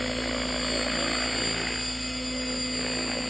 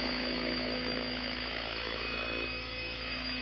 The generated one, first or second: second